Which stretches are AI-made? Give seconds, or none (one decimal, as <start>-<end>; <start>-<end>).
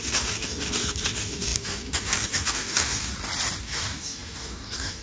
0.0-3.1; 3.6-5.0